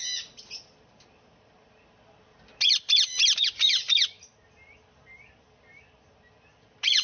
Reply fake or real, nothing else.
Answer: real